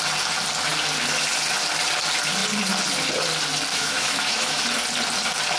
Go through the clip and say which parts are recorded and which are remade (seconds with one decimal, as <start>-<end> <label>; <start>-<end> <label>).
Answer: 0.0-3.7 recorded; 3.7-4.6 remade; 4.6-5.6 recorded